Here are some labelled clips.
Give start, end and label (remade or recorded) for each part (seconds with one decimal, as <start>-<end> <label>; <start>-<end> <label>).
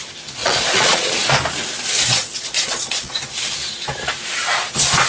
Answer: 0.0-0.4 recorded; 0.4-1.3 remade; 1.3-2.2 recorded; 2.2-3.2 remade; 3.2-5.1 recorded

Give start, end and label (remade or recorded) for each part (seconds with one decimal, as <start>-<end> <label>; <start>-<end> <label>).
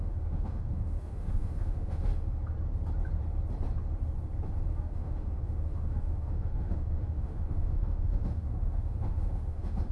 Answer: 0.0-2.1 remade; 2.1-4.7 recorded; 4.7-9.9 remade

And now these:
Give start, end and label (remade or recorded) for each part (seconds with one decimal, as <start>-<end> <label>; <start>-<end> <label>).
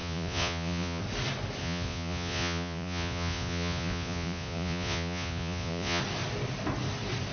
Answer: 0.0-1.0 remade; 1.0-1.6 recorded; 1.6-6.0 remade; 6.0-7.3 recorded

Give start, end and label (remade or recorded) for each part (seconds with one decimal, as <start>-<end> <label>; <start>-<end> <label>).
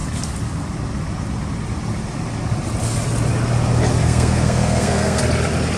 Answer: 0.0-4.0 recorded; 4.0-5.2 remade; 5.2-5.8 recorded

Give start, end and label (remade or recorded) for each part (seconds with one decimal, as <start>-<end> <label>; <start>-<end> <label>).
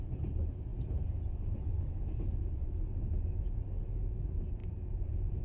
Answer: 0.0-5.4 remade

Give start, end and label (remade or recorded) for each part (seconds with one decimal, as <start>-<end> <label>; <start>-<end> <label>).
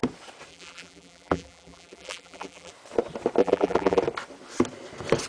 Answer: 0.0-0.5 recorded; 0.5-2.7 remade; 2.7-3.4 recorded; 3.4-4.0 remade; 4.0-5.3 recorded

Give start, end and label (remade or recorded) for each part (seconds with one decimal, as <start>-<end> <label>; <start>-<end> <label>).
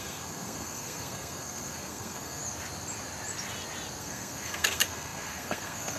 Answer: 0.0-2.4 remade; 2.4-4.0 recorded; 4.0-6.0 remade